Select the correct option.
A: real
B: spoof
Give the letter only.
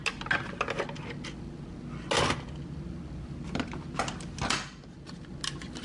A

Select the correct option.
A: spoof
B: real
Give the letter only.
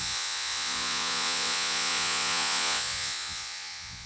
A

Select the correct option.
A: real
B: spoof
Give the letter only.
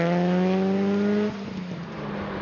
A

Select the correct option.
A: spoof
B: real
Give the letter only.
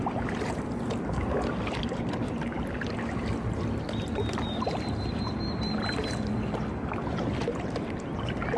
B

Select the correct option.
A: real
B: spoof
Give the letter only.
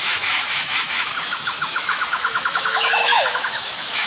B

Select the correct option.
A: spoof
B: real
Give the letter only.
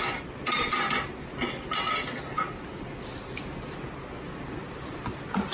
B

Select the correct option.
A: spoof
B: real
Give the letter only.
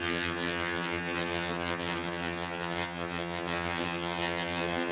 A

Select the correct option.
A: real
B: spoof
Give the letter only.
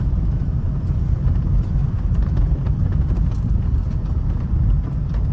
B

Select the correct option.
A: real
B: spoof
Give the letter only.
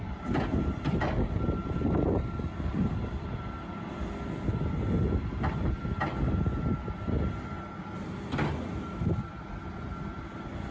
A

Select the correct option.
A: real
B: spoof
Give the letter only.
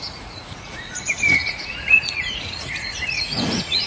B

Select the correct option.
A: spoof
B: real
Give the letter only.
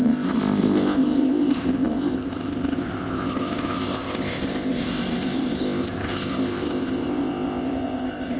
A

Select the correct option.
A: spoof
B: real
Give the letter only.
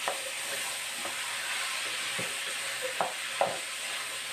B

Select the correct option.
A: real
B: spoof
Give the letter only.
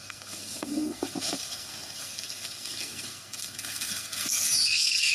B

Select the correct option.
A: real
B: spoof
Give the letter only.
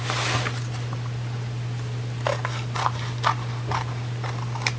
A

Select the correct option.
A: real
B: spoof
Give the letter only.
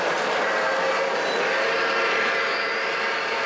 A